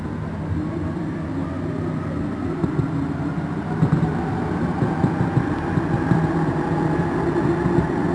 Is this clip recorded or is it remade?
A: recorded